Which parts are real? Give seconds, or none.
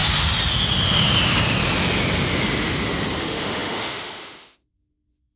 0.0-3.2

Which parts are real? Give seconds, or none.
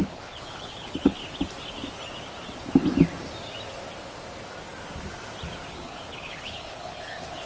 1.2-5.7